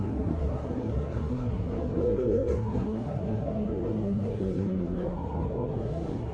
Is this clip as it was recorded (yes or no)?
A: no